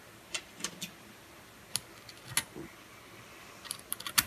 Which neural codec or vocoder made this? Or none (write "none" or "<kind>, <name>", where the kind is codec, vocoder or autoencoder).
none